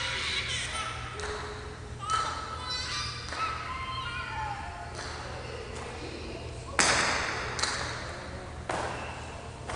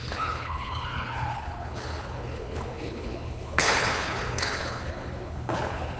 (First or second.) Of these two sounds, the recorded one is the first